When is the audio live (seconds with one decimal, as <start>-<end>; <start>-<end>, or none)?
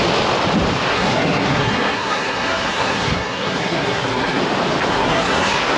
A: 0.0-0.9; 4.4-4.9